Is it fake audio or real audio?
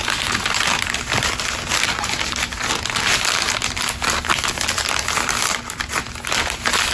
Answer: real